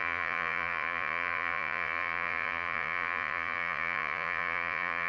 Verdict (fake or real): fake